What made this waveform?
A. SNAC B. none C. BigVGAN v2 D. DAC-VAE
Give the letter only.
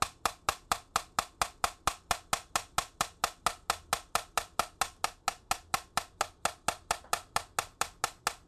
B